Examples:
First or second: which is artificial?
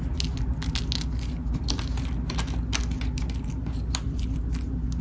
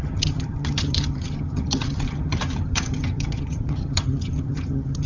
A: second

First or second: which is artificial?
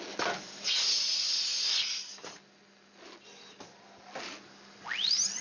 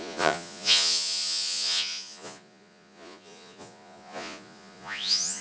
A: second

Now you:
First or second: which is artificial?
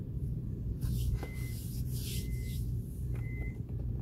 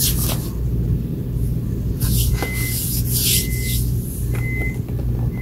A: first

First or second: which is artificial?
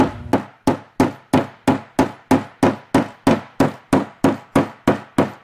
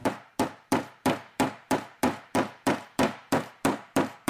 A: second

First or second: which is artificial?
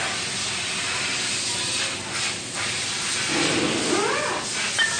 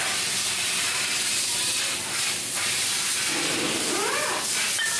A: second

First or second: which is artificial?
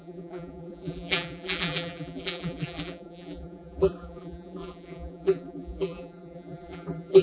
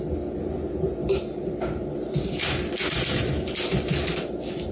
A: first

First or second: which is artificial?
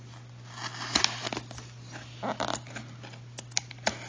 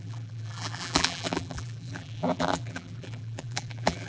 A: second